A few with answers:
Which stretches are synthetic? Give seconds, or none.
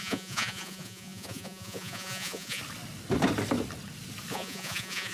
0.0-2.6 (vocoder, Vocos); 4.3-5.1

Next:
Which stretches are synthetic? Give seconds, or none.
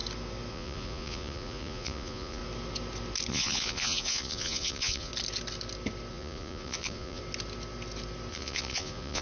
0.5-2.4 (vocoder, Vocos); 3.3-5.1; 6.1-7.2; 8.3-9.2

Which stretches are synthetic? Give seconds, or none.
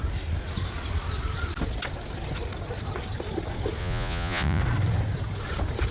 3.8-4.6 (vocoder, Vocos)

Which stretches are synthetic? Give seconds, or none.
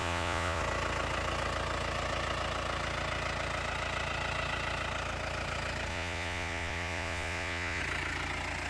0.0-0.6 (vocoder, Vocos); 5.9-7.8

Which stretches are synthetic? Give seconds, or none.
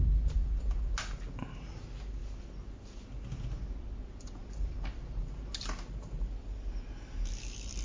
none